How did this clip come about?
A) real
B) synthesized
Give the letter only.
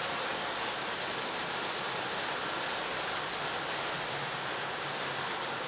A